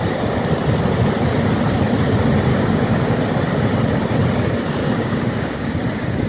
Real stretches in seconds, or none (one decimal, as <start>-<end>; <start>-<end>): 0.0-2.5; 3.2-4.8; 5.7-6.3